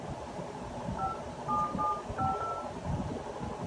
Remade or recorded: recorded